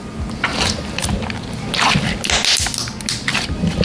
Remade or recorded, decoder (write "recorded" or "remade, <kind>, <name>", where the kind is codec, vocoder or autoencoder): recorded